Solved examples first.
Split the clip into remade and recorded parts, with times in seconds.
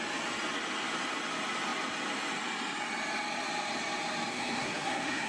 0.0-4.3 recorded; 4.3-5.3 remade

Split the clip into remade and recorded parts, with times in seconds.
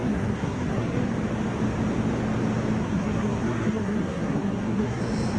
0.0-1.1 remade; 1.1-2.8 recorded; 2.8-5.0 remade; 5.0-5.4 recorded